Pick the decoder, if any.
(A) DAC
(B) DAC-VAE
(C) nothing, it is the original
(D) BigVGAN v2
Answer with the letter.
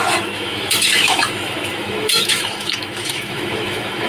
B